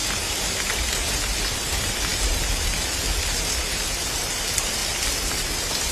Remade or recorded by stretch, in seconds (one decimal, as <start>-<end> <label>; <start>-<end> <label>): 0.0-5.9 recorded